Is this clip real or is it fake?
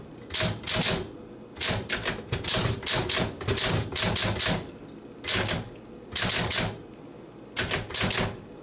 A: real